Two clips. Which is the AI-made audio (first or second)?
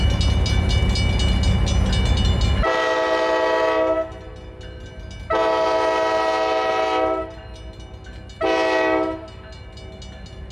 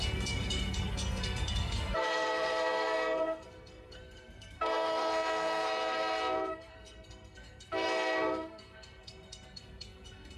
second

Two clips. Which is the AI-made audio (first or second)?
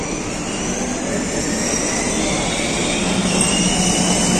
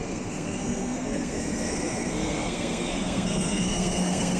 second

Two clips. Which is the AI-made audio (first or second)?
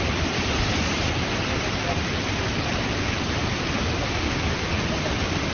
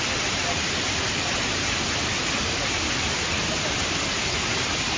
first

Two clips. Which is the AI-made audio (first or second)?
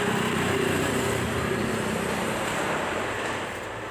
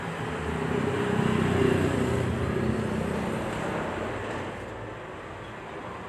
first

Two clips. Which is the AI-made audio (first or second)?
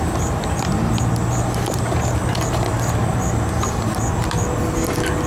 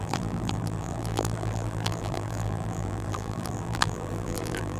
second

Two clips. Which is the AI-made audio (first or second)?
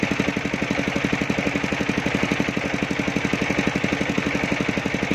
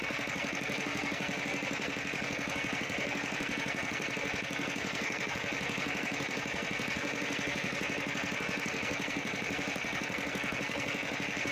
second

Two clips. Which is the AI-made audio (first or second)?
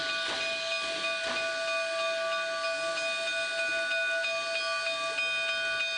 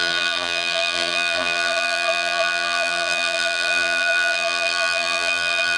second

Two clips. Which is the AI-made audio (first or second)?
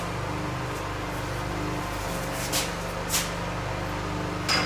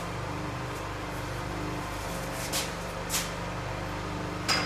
second